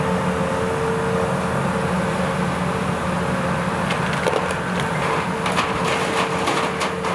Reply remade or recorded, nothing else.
recorded